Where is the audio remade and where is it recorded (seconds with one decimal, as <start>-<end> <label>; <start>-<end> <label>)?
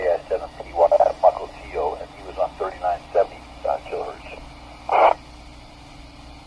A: 0.0-6.5 recorded